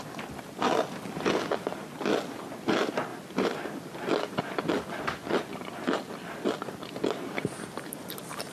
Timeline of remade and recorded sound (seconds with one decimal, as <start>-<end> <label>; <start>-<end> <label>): 0.0-8.5 recorded